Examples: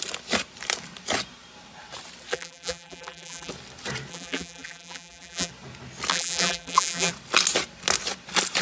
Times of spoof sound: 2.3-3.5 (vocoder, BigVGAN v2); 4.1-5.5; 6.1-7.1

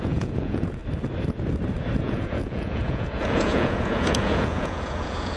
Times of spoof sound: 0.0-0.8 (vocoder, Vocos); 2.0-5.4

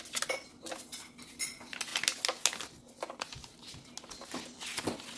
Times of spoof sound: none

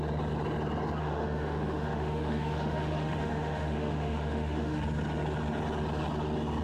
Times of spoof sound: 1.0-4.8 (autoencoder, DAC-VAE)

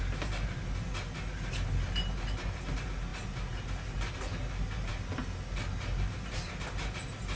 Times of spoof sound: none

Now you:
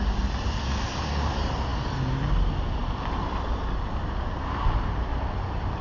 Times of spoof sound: none